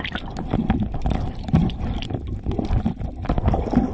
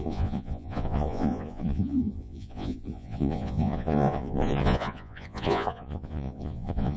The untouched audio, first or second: first